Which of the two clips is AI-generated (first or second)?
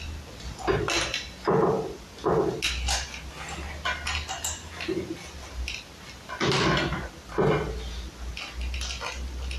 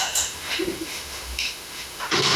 second